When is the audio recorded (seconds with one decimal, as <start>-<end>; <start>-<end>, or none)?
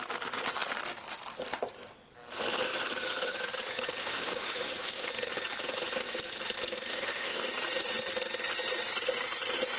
0.0-4.0; 5.1-6.9; 7.5-9.8